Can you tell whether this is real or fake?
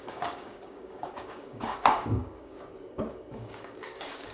fake